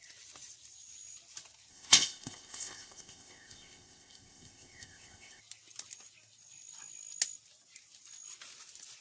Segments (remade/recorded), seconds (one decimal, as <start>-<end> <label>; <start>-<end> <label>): 0.0-1.7 recorded; 1.7-5.4 remade; 5.4-9.0 recorded